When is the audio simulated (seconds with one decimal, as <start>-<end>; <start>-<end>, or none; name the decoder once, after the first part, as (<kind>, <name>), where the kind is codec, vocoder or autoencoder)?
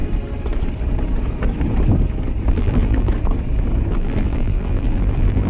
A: 2.5-3.1 (vocoder, BigVGAN v2); 3.9-5.5